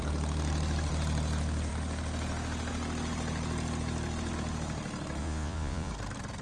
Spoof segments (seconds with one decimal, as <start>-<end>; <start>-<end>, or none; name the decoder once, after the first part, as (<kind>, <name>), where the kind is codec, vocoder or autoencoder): 5.2-5.9 (vocoder, Vocos)